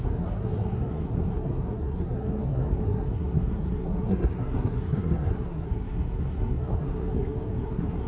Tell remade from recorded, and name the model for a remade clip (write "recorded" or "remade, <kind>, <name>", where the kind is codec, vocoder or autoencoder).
remade, codec, SNAC